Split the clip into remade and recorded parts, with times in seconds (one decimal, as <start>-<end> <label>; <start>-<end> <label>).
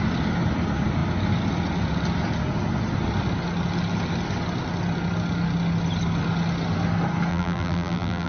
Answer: 0.0-7.3 recorded; 7.3-8.3 remade